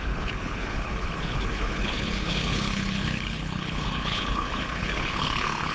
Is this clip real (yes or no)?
no